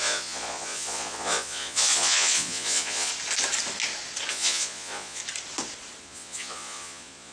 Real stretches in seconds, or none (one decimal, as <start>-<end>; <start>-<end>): 3.1-4.3; 5.2-6.0